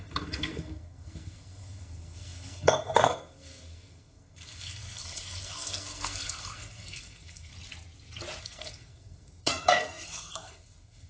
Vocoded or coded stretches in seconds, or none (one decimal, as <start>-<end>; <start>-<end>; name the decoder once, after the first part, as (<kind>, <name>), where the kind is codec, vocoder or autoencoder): 0.0-7.5 (codec, SNAC); 8.4-11.1